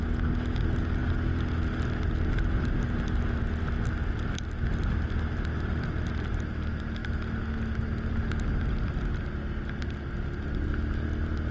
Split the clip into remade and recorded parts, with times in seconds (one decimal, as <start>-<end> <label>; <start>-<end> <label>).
0.0-11.5 recorded